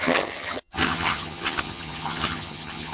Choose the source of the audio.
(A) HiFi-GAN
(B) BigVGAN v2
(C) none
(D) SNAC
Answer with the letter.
A